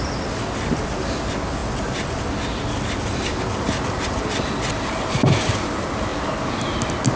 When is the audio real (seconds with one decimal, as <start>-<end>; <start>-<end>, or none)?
0.0-7.2